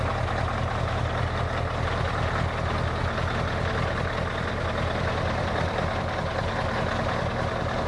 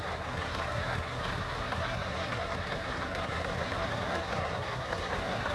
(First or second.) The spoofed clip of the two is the second